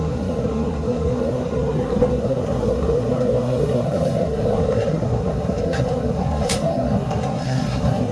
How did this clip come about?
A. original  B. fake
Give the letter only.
B